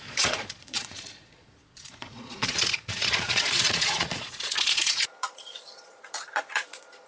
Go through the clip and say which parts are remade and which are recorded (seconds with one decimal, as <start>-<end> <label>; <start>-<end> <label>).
0.0-7.1 remade